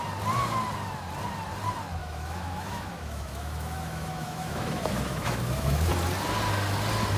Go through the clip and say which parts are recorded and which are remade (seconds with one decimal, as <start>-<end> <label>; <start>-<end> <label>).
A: 0.0-2.0 recorded; 2.0-5.9 remade; 5.9-7.2 recorded